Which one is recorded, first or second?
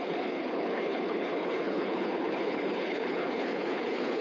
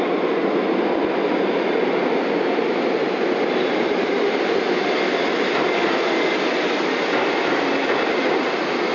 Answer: second